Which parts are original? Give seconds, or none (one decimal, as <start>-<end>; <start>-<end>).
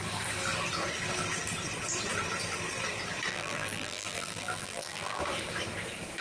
0.0-3.3; 5.2-6.2